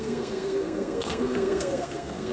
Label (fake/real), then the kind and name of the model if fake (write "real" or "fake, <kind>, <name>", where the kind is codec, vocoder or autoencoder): fake, codec, SNAC